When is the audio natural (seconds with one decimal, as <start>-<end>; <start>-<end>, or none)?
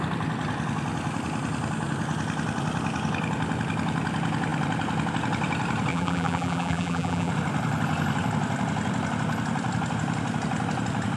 0.0-5.9; 7.3-11.2